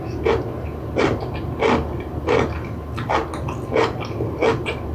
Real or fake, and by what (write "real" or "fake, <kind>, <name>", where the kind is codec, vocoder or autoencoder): real